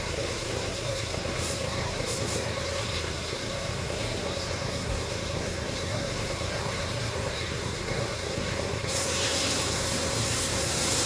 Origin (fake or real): fake